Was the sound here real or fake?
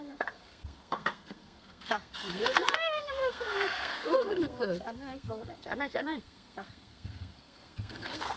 fake